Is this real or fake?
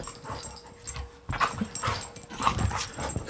real